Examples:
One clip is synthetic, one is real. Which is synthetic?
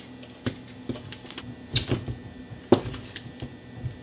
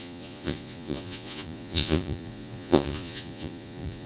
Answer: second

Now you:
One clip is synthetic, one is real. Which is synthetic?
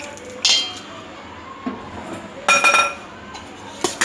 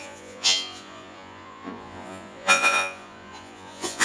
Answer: second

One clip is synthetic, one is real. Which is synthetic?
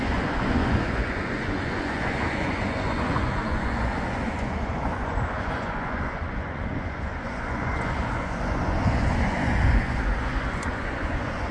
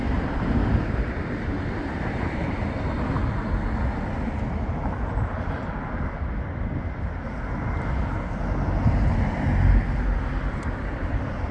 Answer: first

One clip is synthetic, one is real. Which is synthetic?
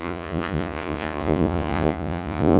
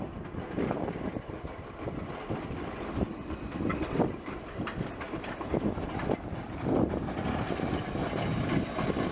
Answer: first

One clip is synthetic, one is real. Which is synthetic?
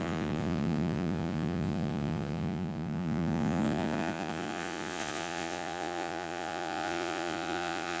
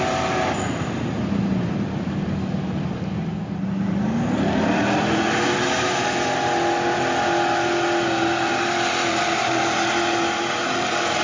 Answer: first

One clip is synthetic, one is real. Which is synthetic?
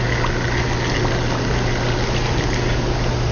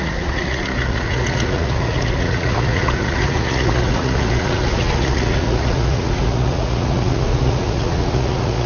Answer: second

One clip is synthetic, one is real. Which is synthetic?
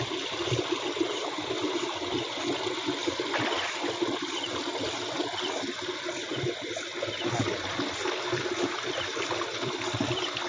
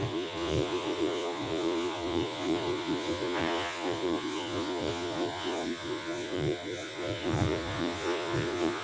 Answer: second